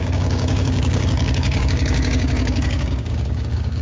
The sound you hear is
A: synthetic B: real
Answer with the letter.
A